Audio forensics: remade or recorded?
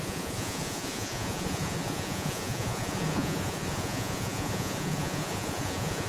remade